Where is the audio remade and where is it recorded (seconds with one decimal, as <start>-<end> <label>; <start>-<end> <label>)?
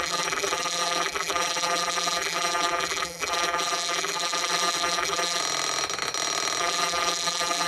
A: 0.0-5.4 remade; 5.4-6.6 recorded; 6.6-7.7 remade